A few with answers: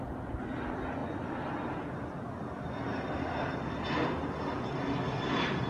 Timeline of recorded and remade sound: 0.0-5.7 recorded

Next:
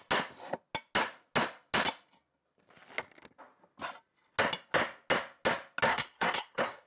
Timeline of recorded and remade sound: 0.0-5.9 recorded; 5.9-6.9 remade

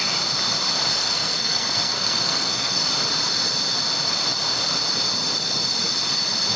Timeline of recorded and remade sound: 0.0-0.9 recorded; 0.9-2.8 remade; 2.8-6.6 recorded

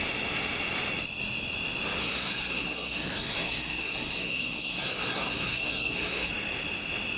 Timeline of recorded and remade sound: 0.0-2.0 recorded; 2.0-6.3 remade; 6.3-7.2 recorded